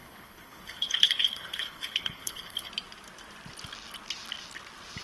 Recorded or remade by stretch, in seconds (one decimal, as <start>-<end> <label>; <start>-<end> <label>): 0.0-2.7 remade; 2.7-5.0 recorded